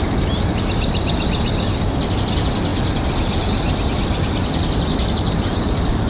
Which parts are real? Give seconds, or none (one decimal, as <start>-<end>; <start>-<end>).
0.0-2.7